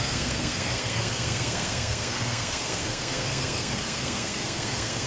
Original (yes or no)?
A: no